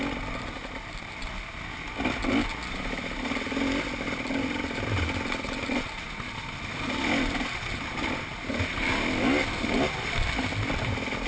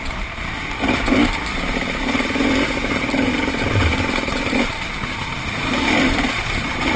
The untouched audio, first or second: first